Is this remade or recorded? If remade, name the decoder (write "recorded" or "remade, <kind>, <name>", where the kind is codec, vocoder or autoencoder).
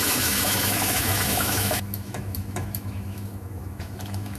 remade, autoencoder, DAC-VAE